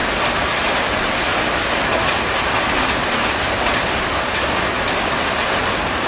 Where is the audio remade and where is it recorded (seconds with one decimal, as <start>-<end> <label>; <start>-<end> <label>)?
0.0-6.1 recorded